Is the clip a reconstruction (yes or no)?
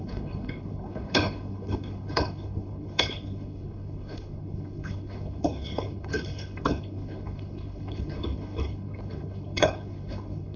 yes